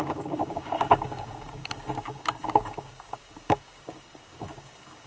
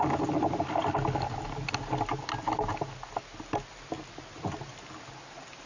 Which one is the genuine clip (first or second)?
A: second